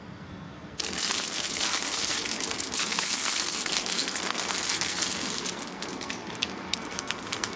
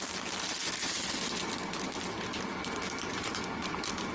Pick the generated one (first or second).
first